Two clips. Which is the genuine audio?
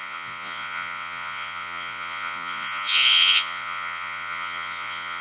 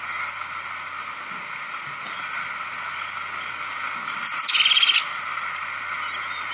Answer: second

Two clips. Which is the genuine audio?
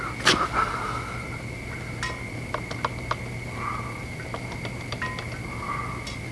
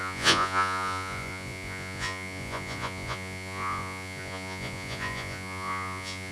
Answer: first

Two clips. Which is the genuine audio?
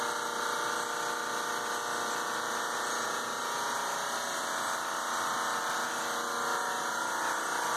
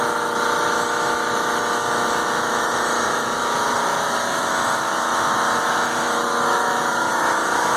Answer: first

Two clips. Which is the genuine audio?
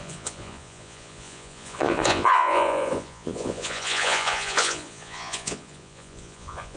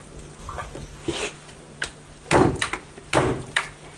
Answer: second